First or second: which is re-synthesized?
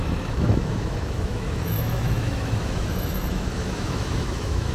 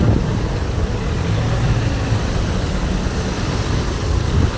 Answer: first